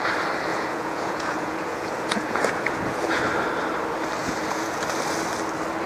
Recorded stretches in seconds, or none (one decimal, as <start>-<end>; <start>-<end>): 0.0-0.5; 3.2-4.2; 4.8-5.9